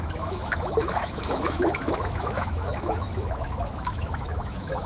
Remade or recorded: remade